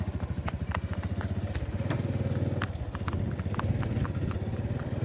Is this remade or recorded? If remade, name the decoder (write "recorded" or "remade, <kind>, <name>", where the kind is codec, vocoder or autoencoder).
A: recorded